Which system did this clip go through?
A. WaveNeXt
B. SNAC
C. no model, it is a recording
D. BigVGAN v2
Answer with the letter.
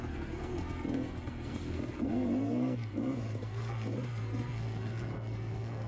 B